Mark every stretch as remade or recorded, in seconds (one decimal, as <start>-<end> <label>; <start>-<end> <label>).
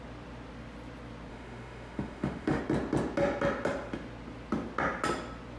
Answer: 0.0-1.3 recorded; 1.3-2.6 remade; 2.6-5.6 recorded